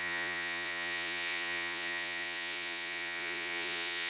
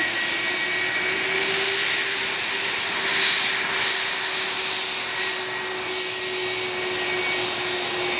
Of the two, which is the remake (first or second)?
first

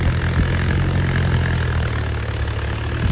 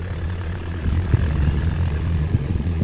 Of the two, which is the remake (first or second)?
second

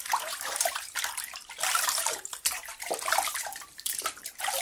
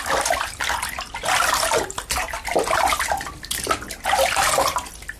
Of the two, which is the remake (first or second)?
first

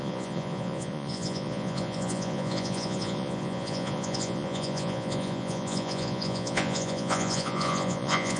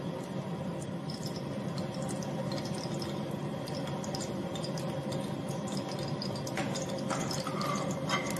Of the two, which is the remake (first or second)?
first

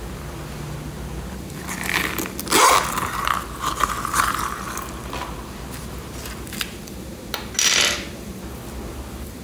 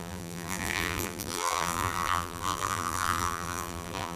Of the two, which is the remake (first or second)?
second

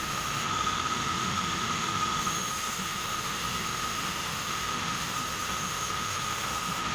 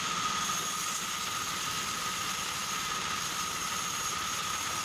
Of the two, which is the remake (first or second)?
first